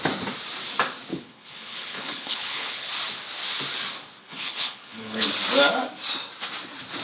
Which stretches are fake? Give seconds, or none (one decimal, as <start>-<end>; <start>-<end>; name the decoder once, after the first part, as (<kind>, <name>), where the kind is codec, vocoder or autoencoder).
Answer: 1.1-2.9 (codec, HILCodec); 4.2-5.3